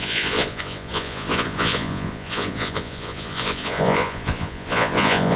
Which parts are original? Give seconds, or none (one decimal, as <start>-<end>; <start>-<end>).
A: none